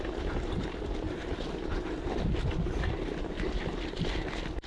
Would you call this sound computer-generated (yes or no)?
no